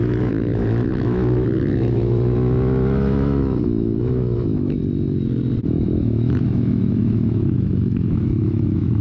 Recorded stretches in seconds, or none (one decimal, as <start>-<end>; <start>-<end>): 4.8-5.7